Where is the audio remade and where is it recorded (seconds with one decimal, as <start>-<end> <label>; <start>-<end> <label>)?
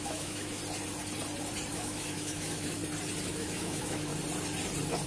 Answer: 0.0-0.6 remade; 0.6-1.7 recorded; 1.7-2.8 remade; 2.8-3.3 recorded; 3.3-4.1 remade; 4.1-5.1 recorded